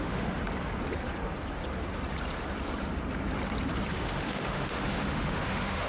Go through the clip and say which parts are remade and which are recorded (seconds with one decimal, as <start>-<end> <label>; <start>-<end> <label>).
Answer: 0.0-0.4 remade; 0.4-3.9 recorded; 3.9-5.9 remade